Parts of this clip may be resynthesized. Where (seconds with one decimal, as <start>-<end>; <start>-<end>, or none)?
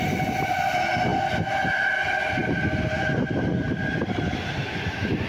none